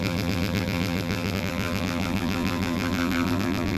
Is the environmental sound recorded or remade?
remade